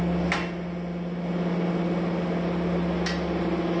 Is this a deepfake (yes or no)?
no